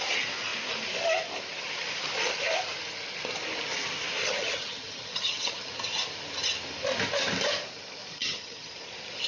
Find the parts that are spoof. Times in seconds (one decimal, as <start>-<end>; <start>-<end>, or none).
4.2-5.7; 8.1-8.7